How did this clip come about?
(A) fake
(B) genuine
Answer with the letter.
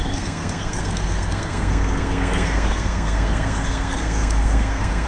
A